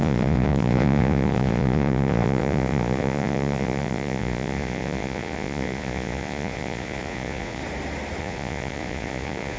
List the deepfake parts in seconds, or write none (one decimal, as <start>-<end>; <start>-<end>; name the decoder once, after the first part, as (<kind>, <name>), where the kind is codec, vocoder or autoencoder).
0.0-7.6 (vocoder, Vocos); 8.2-9.6